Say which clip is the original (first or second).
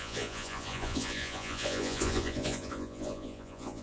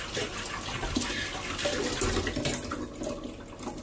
second